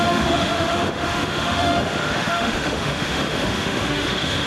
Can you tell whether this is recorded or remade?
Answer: remade